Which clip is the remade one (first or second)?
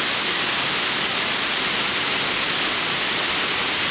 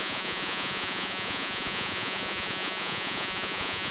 second